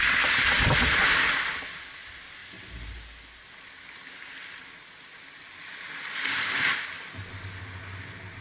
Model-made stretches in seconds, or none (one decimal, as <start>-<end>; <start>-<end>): none